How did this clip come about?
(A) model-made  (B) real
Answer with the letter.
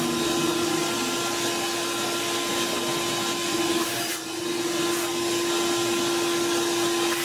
B